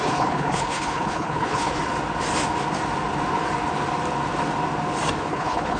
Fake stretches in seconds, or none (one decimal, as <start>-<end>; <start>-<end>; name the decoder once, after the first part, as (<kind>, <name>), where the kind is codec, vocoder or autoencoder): 0.0-1.8 (codec, HILCodec); 5.3-5.8